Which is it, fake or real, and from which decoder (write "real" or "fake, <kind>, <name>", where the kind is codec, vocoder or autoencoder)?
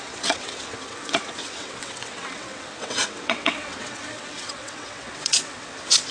fake, vocoder, WaveNeXt